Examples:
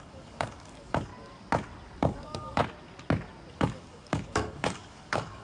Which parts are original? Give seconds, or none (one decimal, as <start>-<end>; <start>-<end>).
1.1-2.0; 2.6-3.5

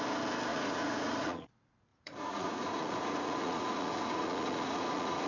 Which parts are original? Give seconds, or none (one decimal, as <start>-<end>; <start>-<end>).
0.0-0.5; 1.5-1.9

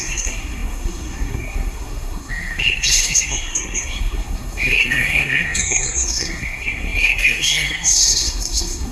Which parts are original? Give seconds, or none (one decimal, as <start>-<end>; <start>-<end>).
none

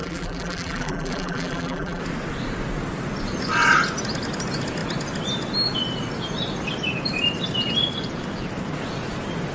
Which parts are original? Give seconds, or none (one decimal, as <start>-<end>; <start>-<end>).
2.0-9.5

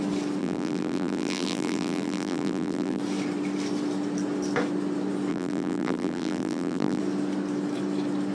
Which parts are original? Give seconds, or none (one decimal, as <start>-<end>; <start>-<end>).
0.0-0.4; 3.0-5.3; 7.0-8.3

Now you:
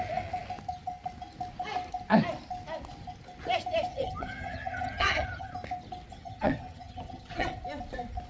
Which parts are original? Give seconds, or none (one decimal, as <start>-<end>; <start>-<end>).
0.0-3.9; 5.5-6.1; 7.6-8.3